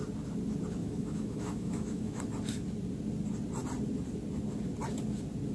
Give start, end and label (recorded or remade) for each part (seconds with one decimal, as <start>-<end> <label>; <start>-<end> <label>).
0.0-0.8 recorded; 0.8-2.2 remade; 2.2-5.5 recorded